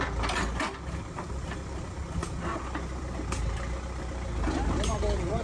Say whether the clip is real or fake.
fake